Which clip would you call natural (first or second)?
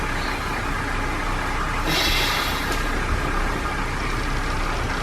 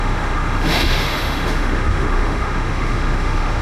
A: first